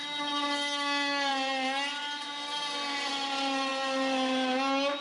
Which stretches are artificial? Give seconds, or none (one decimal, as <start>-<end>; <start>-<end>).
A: none